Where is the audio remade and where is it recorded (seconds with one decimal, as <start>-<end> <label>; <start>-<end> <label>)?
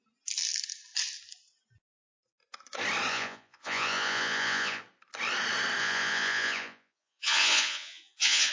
0.0-3.1 recorded; 3.1-4.8 remade; 4.8-5.8 recorded; 5.8-8.5 remade